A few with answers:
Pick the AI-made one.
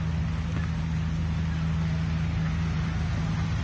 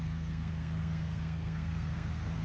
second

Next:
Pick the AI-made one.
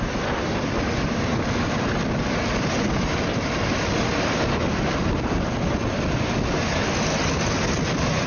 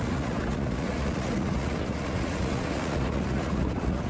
second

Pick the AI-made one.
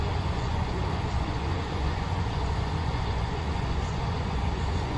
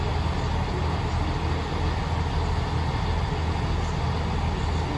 first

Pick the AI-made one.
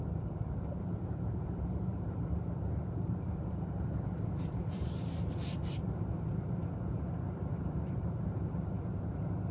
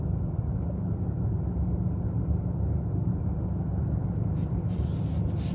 first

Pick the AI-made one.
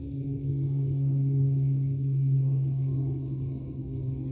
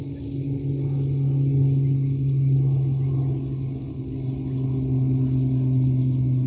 first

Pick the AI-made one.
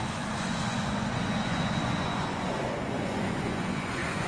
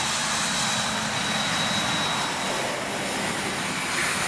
first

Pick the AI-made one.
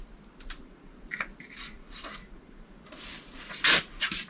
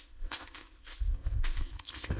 second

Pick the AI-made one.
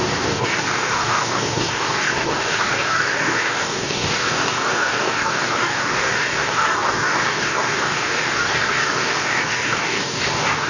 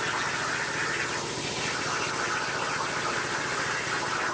first